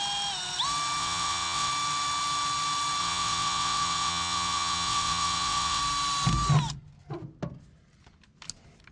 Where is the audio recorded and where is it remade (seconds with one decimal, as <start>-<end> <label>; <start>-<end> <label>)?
0.0-1.0 recorded; 1.0-1.7 remade; 1.7-3.0 recorded; 3.0-5.8 remade; 5.8-8.9 recorded